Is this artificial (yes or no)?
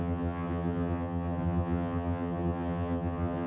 yes